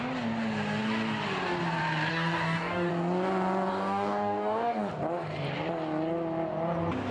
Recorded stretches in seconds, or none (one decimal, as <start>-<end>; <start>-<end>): 0.0-2.1; 2.9-3.7; 4.9-7.1